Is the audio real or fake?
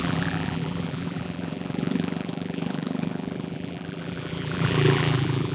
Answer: fake